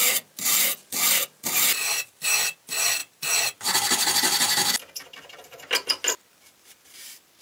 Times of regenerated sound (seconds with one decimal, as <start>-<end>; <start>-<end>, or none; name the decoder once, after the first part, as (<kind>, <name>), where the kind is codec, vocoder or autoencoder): none